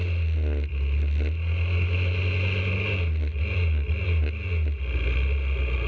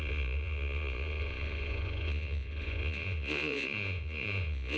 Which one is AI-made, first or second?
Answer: second